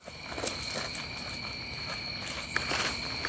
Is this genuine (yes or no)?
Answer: yes